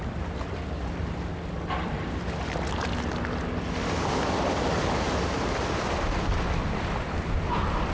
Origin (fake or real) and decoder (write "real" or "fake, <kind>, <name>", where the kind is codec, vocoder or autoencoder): real